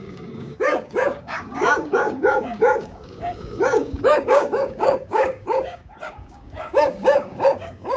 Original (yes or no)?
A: no